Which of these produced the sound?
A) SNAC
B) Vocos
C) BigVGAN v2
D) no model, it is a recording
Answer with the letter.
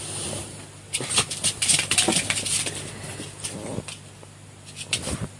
C